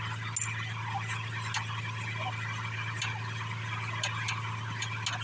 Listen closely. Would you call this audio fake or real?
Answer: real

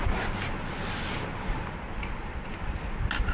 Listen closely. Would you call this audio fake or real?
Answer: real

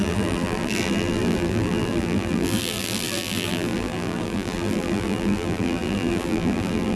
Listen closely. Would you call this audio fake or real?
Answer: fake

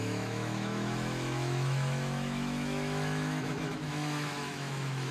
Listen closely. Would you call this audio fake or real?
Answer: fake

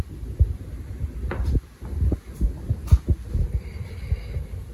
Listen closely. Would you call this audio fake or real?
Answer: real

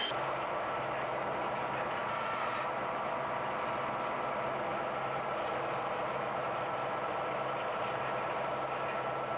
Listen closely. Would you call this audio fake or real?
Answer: real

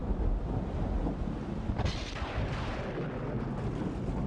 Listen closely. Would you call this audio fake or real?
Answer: real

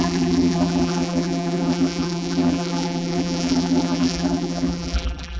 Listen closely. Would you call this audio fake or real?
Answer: fake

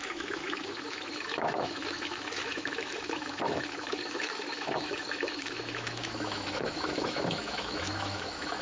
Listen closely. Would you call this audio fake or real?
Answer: fake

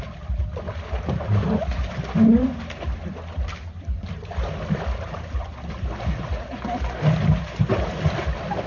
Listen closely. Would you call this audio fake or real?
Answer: real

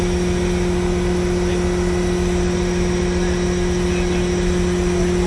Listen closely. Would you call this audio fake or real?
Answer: real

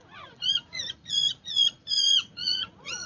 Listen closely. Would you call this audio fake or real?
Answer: fake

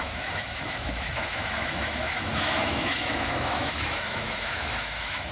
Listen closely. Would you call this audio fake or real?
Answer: fake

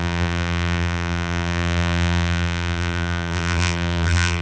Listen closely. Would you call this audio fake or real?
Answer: fake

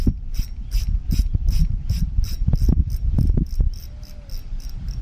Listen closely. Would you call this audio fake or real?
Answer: real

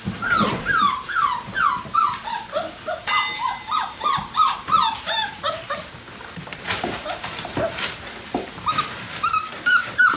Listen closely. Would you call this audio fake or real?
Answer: fake